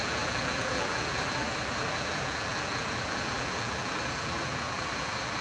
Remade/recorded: remade